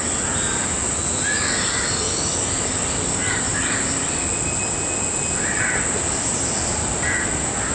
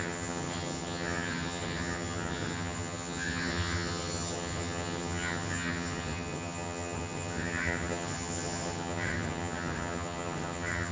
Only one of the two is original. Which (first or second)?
first